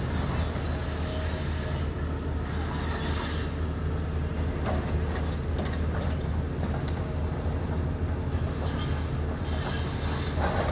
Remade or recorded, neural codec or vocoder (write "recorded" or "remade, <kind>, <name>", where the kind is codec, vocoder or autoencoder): recorded